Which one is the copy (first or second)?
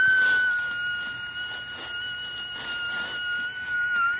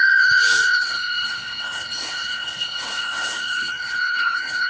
second